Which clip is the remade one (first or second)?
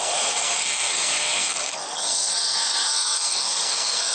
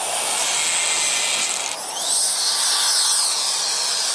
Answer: first